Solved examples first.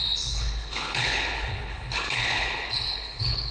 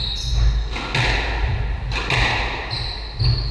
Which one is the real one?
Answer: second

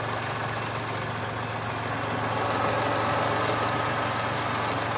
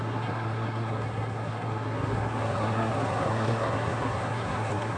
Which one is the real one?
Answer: first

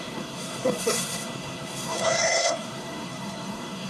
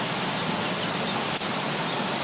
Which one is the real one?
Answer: second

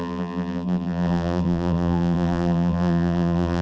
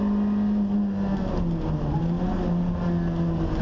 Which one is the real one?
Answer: second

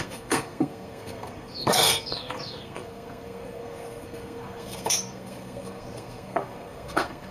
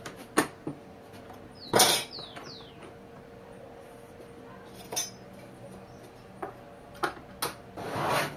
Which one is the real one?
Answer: second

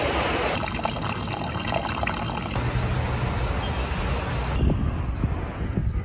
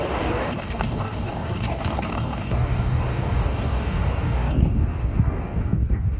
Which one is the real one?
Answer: first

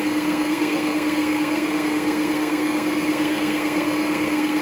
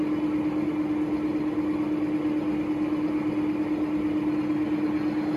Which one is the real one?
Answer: second